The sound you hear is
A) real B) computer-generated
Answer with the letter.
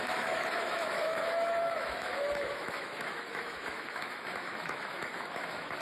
B